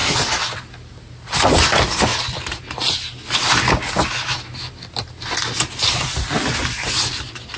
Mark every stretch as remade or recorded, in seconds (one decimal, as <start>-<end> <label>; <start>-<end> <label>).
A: 0.0-7.6 recorded